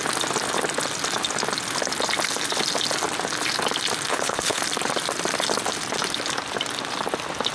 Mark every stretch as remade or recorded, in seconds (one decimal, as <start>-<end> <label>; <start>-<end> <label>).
0.0-4.1 recorded; 4.1-4.6 remade; 4.6-7.5 recorded